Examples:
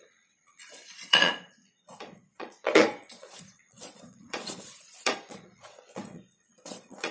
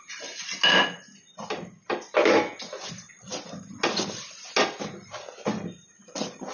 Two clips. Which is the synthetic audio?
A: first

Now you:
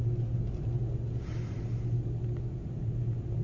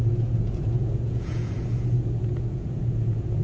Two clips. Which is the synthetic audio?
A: second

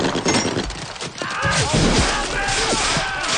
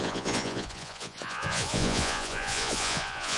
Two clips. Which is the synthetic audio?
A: second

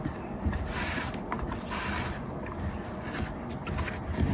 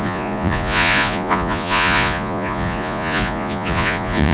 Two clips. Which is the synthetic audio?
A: second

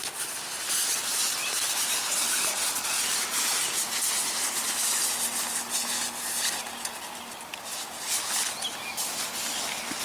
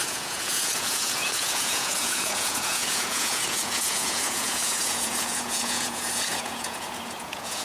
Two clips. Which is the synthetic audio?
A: second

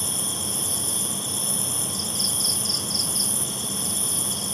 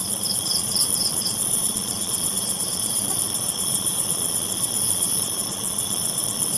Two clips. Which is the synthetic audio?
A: second